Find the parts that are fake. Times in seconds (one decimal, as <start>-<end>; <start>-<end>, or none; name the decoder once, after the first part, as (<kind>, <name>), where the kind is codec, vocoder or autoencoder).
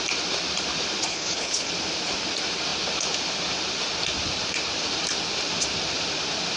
1.1-1.7 (codec, HILCodec)